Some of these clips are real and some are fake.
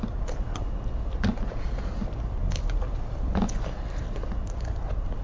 real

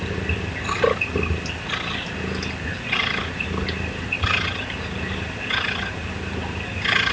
real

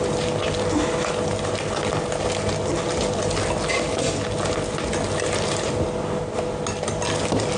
real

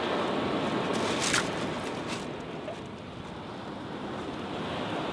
real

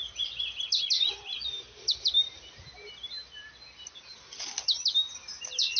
real